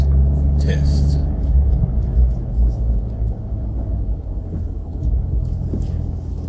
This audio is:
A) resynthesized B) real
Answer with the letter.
A